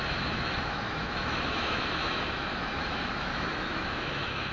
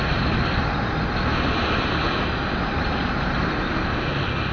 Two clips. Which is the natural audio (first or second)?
second